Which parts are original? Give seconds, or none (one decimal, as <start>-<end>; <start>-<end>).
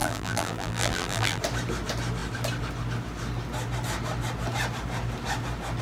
1.4-5.8